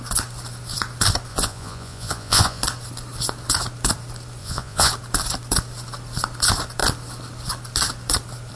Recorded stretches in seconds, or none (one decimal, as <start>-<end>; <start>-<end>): 0.0-1.3; 2.6-4.4; 4.9-8.5